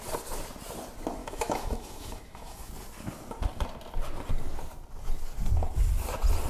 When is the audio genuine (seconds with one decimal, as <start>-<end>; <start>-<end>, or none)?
0.0-1.2; 2.7-6.5